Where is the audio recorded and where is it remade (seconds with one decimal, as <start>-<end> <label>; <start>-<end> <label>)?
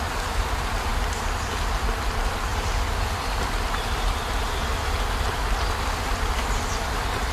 0.0-0.9 remade; 0.9-1.8 recorded; 1.8-2.5 remade; 2.5-6.3 recorded; 6.3-7.3 remade